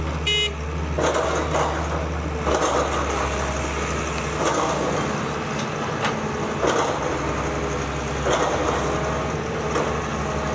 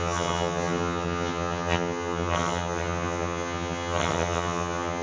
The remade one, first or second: second